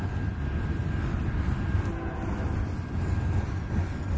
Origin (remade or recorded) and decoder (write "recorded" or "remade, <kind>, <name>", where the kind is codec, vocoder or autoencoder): recorded